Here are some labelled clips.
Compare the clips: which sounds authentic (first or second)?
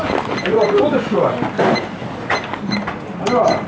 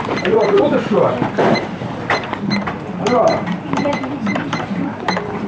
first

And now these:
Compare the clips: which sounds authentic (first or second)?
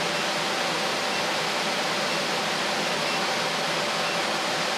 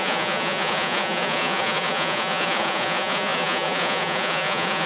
first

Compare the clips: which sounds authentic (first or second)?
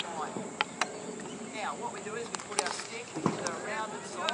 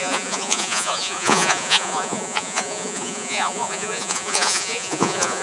first